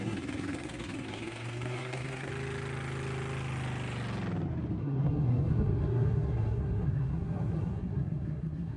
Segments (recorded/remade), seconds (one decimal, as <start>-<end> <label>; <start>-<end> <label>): 0.0-2.3 remade; 2.3-4.8 recorded; 4.8-8.8 remade